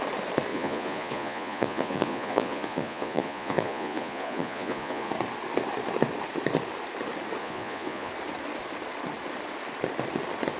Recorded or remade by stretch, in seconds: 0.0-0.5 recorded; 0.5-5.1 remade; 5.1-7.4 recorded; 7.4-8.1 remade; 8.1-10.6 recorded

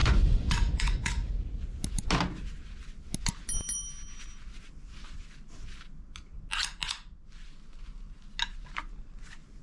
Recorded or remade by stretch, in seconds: 0.0-1.1 remade; 1.1-9.6 recorded

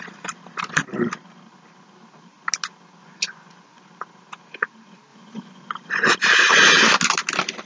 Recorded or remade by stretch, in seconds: 0.0-3.0 recorded; 3.0-3.8 remade; 3.8-5.1 recorded; 5.1-6.1 remade; 6.1-7.7 recorded

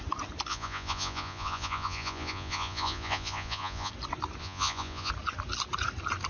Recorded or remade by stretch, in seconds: 0.0-0.5 recorded; 0.5-3.9 remade; 3.9-4.4 recorded; 4.4-5.1 remade; 5.1-6.3 recorded